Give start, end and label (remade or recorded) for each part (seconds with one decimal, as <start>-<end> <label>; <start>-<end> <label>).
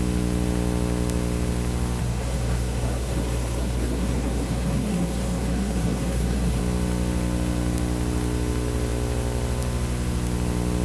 0.0-2.0 recorded; 2.0-6.6 remade; 6.6-10.8 recorded